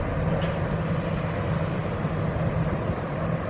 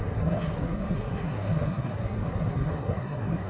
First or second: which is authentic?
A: first